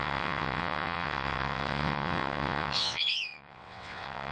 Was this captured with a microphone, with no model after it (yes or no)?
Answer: no